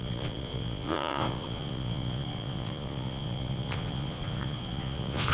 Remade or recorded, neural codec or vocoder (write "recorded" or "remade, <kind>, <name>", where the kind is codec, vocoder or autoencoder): remade, vocoder, Vocos